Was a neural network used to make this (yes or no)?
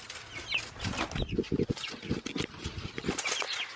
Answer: no